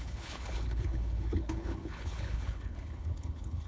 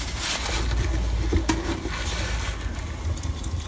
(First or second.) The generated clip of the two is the first